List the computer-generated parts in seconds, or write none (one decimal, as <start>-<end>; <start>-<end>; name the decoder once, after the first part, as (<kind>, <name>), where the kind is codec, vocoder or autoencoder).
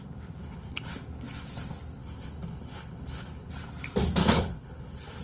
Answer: 0.4-0.9 (codec, HILCodec); 2.0-3.5; 4.2-5.2